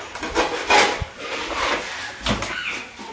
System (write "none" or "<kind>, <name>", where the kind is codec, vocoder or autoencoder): none